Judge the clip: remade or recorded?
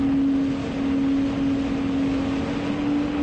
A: recorded